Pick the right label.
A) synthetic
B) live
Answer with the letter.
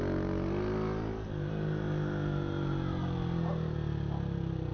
B